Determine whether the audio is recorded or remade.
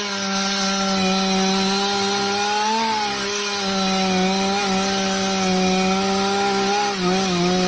recorded